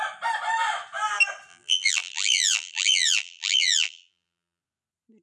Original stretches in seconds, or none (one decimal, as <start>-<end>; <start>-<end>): 0.0-1.5; 4.6-5.2